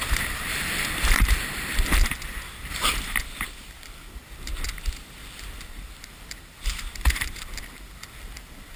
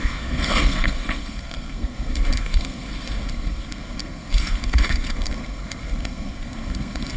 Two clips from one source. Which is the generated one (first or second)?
second